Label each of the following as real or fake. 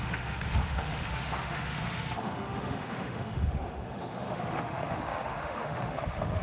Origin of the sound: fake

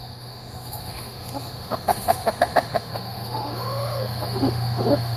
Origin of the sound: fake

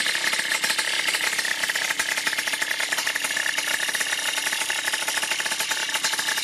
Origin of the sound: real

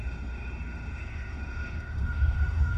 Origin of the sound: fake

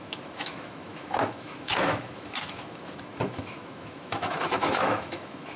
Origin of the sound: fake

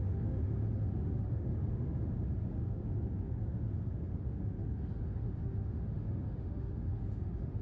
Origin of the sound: fake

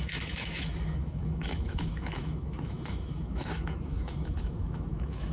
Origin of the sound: fake